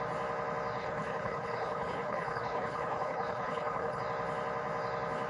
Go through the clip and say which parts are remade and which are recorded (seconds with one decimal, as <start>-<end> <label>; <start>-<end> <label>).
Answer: 0.0-0.8 recorded; 0.8-4.0 remade; 4.0-5.3 recorded

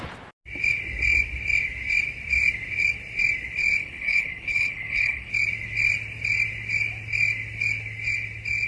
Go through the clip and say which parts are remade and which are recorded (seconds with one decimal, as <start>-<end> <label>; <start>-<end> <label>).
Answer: 0.0-3.8 recorded; 3.8-5.3 remade; 5.3-8.7 recorded

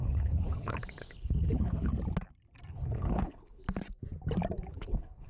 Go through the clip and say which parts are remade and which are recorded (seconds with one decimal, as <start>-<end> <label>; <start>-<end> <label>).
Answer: 0.0-1.9 remade; 1.9-2.7 recorded; 2.7-3.6 remade; 3.6-4.7 recorded; 4.7-5.3 remade

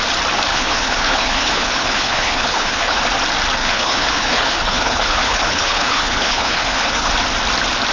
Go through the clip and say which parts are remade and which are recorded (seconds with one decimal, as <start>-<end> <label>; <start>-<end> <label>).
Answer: 0.0-0.5 recorded; 0.5-3.0 remade; 3.0-3.6 recorded; 3.6-7.1 remade; 7.1-7.9 recorded

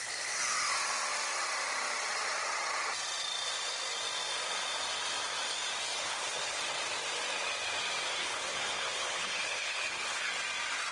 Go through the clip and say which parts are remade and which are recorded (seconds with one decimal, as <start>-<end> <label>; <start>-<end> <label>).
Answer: 0.0-5.9 recorded; 5.9-6.6 remade; 6.6-8.2 recorded; 8.2-10.3 remade; 10.3-10.9 recorded

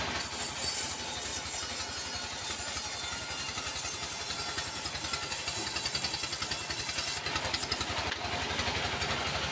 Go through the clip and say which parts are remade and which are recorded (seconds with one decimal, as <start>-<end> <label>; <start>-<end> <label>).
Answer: 0.0-9.5 recorded

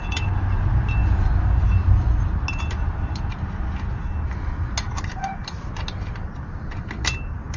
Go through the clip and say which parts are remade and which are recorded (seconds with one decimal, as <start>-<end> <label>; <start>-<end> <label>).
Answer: 0.0-7.6 recorded